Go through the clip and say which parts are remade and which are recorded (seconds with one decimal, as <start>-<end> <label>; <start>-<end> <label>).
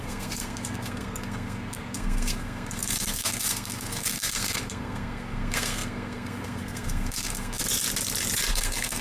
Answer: 0.0-7.6 remade; 7.6-8.5 recorded; 8.5-9.0 remade